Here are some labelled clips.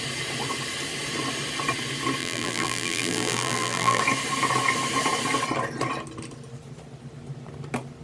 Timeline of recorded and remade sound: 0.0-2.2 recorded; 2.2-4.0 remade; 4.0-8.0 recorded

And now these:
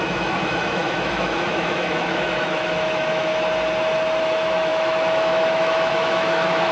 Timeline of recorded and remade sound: 0.0-3.3 remade; 3.3-4.2 recorded; 4.2-6.7 remade